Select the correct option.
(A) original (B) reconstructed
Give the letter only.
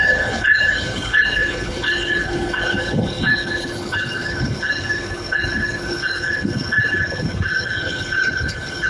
B